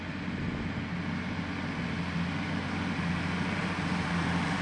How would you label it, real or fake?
real